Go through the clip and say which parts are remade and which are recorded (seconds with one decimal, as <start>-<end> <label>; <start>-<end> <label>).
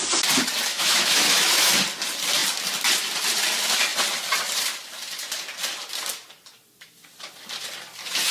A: 0.0-0.7 recorded; 0.7-1.7 remade; 1.7-8.3 recorded